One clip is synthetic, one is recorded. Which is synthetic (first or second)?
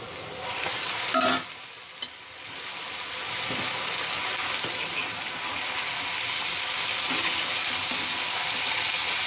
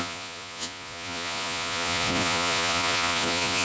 second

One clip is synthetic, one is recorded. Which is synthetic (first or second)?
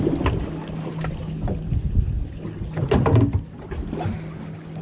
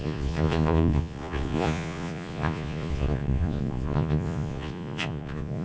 second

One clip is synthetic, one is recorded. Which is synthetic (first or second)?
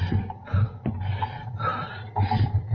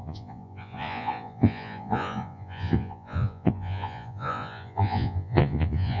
second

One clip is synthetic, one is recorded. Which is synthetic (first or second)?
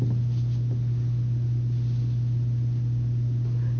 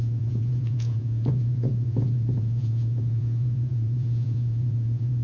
second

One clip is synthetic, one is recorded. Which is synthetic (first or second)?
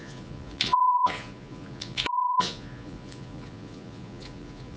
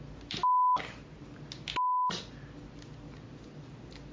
first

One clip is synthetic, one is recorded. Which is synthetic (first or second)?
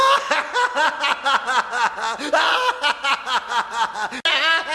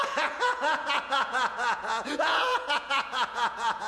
second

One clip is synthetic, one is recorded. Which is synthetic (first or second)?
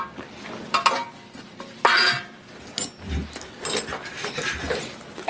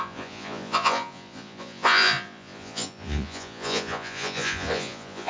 second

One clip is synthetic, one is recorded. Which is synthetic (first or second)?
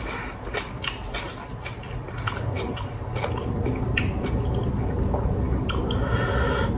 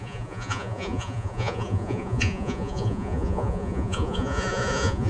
second